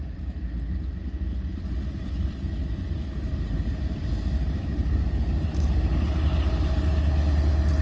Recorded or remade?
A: recorded